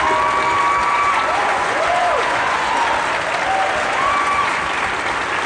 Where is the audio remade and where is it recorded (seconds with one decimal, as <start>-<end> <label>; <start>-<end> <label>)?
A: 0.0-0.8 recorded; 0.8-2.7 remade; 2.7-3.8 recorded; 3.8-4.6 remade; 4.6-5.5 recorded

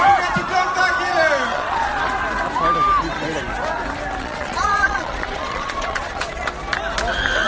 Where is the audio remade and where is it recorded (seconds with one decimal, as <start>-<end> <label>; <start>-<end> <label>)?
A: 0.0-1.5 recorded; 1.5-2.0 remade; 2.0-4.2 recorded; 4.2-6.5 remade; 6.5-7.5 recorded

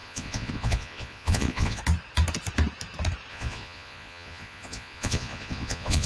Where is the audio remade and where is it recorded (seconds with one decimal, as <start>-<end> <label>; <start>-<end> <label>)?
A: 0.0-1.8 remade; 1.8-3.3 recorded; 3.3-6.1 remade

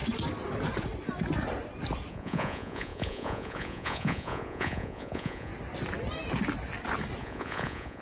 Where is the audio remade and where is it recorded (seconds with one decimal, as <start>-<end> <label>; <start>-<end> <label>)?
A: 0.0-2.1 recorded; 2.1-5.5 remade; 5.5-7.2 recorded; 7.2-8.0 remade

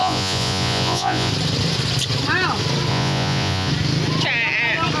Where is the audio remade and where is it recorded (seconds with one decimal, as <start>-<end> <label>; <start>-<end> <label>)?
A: 0.0-1.3 remade; 1.3-2.9 recorded; 2.9-3.7 remade; 3.7-5.0 recorded

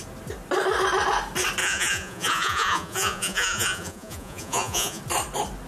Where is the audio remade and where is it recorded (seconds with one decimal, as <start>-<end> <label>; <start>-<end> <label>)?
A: 0.0-1.6 recorded; 1.6-5.0 remade; 5.0-5.7 recorded